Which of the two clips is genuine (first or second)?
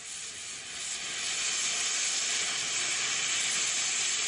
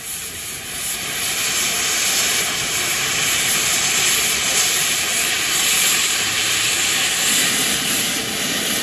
first